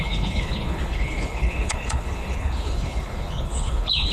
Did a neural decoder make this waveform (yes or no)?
yes